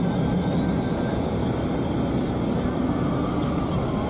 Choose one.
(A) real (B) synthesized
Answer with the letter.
A